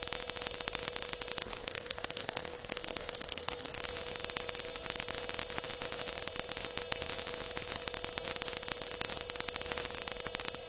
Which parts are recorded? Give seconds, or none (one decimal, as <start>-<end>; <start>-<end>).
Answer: 0.0-1.4; 3.8-10.7